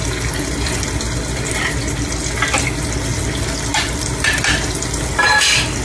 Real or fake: real